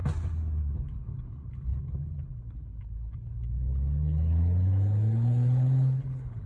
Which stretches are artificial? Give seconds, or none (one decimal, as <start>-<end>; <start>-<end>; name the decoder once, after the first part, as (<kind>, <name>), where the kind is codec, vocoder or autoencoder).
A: 0.6-6.5 (codec, HILCodec)